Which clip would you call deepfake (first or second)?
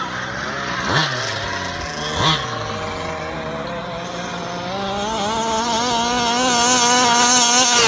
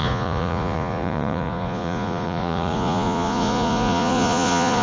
second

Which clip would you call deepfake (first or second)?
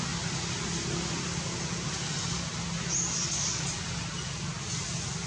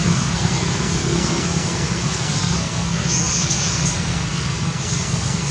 second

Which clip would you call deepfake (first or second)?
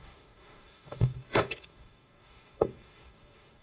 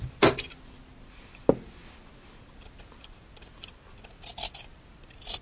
first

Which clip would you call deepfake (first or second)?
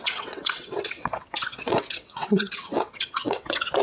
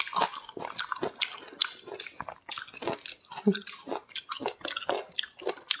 first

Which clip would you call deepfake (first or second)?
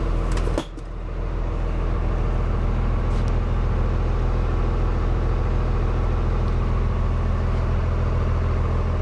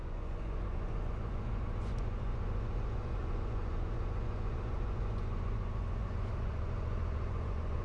second